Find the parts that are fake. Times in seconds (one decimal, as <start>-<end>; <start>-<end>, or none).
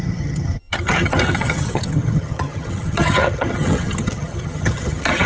0.0-5.3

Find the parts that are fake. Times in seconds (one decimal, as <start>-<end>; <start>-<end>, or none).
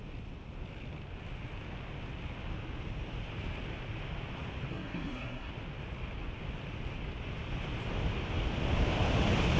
4.7-5.5